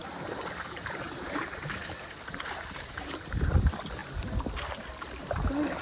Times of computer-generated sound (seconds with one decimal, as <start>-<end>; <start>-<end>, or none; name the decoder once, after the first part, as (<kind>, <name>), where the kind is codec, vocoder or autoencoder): 0.0-3.5 (vocoder, BigVGAN v2)